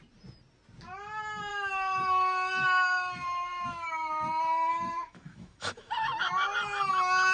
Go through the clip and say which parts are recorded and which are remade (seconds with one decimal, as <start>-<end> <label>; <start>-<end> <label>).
0.0-1.5 recorded; 1.5-5.9 remade; 5.9-7.3 recorded